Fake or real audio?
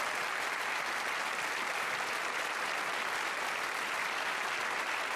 real